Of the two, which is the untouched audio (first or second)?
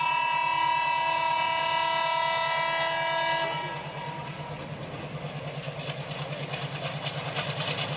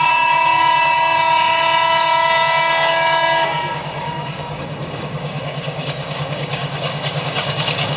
first